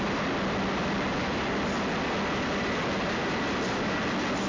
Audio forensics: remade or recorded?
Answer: recorded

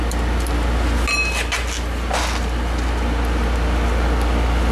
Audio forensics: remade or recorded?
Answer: recorded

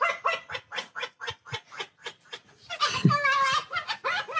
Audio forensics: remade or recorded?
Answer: recorded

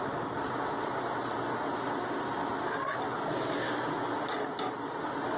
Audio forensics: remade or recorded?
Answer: recorded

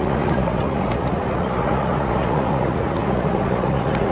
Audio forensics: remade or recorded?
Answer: remade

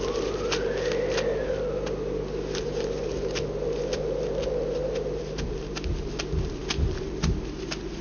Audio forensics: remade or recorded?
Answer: recorded